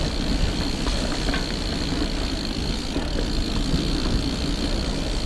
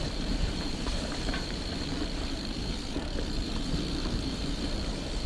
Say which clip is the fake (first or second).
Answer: second